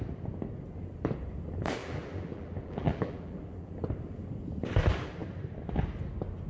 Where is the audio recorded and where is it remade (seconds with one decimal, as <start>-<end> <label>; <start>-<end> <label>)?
0.0-1.8 recorded; 1.8-3.7 remade; 3.7-6.5 recorded